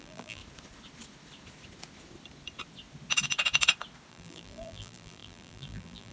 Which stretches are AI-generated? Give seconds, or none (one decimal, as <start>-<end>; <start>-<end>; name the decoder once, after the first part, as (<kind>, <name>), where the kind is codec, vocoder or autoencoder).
0.0-0.4 (vocoder, BigVGAN v2); 4.1-6.1